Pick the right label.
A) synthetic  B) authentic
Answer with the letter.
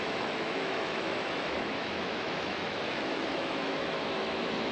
A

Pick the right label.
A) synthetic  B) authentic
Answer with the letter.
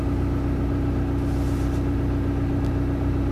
B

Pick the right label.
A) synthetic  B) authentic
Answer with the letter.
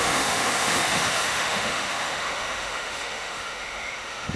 A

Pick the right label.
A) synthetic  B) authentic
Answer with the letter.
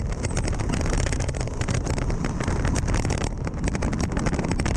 B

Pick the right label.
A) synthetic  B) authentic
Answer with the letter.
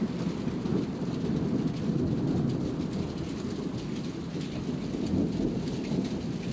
B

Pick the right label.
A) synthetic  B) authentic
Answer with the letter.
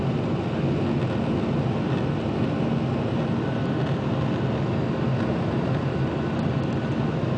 B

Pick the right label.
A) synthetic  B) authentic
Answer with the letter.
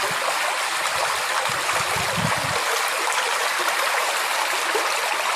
B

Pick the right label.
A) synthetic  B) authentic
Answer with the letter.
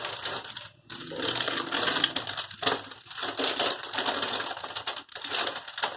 B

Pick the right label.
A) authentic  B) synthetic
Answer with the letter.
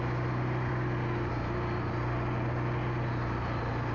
A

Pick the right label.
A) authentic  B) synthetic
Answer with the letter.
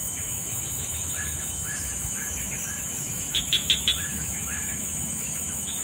B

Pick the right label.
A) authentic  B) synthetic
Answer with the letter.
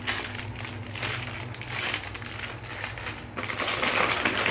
A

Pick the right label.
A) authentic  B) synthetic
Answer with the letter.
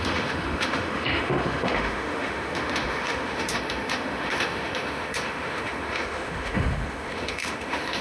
B